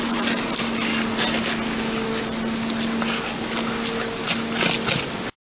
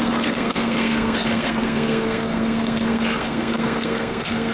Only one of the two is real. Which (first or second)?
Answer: first